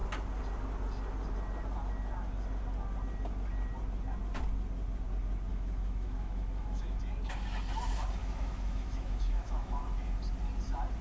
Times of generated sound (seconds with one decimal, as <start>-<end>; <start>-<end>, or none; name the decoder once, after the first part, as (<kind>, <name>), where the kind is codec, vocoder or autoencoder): 5.5-7.0 (autoencoder, DAC-VAE); 8.2-9.8